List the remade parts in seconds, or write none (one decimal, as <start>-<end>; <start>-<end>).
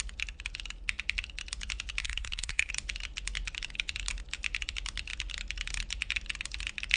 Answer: 2.0-2.7